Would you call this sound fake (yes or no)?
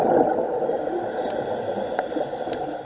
no